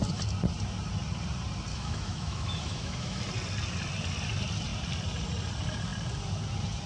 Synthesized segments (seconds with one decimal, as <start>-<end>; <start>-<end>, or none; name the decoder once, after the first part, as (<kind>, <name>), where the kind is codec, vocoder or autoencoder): 1.7-3.2 (autoencoder, DAC-VAE)